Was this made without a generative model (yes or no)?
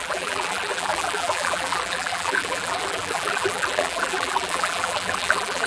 no